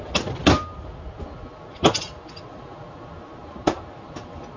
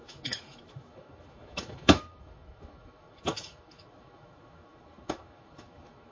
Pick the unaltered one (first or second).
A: first